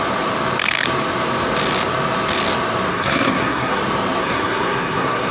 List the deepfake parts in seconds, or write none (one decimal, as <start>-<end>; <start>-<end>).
2.9-3.8; 4.2-5.3